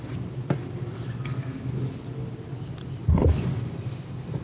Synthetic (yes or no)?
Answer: no